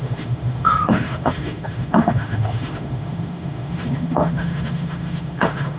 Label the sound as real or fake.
fake